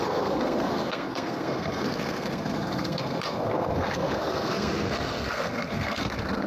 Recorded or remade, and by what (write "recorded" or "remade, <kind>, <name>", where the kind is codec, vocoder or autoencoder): remade, codec, SNAC